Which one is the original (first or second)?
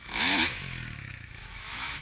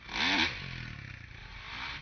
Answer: second